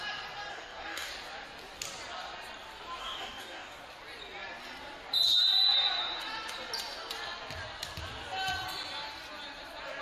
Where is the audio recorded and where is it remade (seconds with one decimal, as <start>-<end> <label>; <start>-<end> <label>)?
0.0-0.5 recorded; 0.5-1.1 remade; 1.1-3.0 recorded; 3.0-3.8 remade; 3.8-10.0 recorded